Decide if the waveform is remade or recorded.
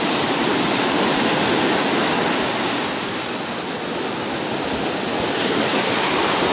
recorded